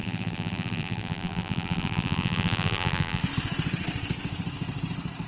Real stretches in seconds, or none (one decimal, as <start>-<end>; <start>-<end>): 3.2-5.3